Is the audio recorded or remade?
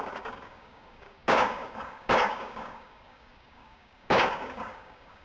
remade